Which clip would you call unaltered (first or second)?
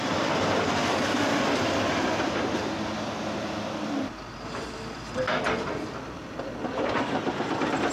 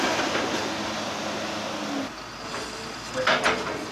second